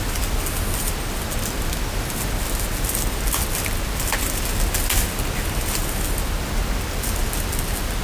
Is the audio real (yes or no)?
yes